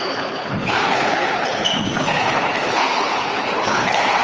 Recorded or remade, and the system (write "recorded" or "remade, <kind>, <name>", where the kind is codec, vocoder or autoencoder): remade, codec, HILCodec